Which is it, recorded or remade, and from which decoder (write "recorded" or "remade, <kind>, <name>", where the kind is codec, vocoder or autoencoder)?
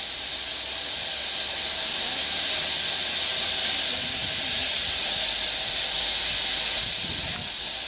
recorded